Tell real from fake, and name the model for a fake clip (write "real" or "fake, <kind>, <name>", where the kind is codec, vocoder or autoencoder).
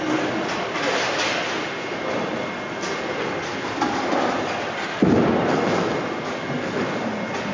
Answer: real